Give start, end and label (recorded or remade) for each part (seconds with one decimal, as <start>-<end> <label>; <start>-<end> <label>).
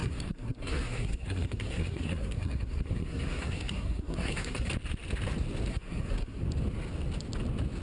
0.0-4.7 remade; 4.7-5.7 recorded; 5.7-6.4 remade; 6.4-7.8 recorded